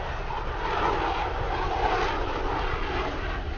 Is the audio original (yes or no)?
yes